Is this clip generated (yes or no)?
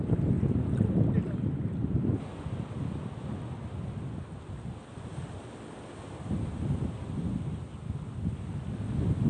no